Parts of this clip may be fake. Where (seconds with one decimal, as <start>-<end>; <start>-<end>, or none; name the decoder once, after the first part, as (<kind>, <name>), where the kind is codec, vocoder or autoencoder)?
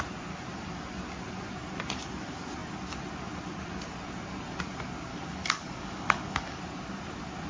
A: 5.1-6.6 (codec, DAC)